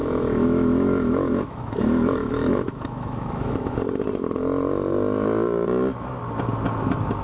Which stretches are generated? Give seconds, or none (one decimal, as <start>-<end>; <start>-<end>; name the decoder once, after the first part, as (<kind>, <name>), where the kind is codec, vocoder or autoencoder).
0.0-3.8 (autoencoder, DAC-VAE)